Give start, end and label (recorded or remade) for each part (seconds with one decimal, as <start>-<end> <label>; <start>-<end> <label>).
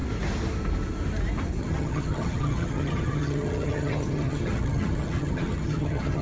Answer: 0.0-1.6 recorded; 1.6-6.2 remade